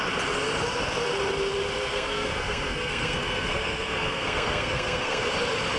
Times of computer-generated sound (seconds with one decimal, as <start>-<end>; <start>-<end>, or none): 1.8-5.3